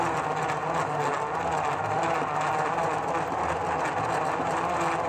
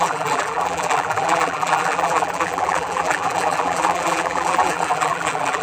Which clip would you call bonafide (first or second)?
first